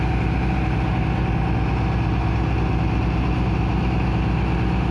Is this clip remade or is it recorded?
recorded